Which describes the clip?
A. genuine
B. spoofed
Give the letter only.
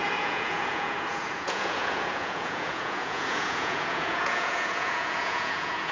B